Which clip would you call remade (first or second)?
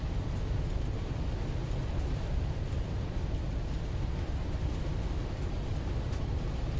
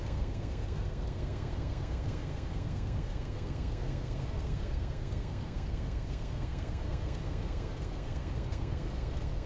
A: second